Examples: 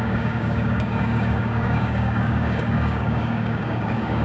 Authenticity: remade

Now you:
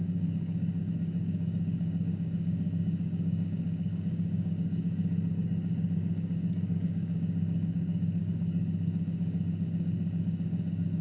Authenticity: remade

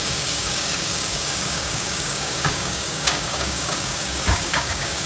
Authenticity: remade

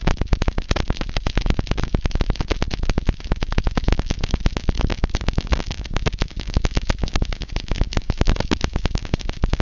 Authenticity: remade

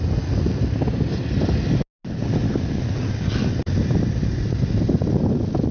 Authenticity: recorded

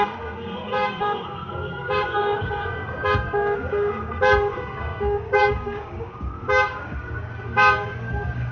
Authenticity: remade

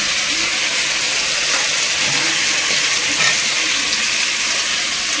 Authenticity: recorded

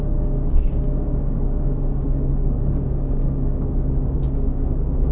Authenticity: remade